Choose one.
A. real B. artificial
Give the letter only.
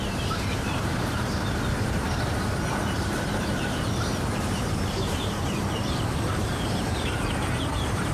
B